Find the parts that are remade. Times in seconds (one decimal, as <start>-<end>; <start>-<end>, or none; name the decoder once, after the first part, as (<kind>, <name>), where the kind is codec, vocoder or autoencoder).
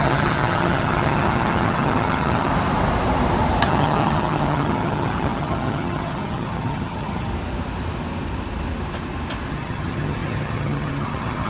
0.0-2.5 (vocoder, HiFi-GAN); 3.6-7.3; 9.5-11.5